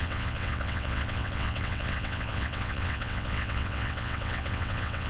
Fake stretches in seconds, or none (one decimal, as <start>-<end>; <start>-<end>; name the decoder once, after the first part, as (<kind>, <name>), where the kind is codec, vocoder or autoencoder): 0.0-5.1 (vocoder, WaveNeXt)